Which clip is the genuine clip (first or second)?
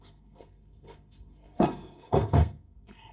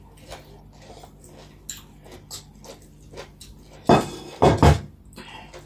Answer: second